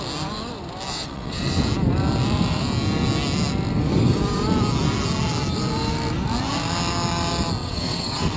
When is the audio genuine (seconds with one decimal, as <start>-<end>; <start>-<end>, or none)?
0.0-0.9; 1.6-7.6